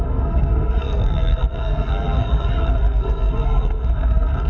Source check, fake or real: fake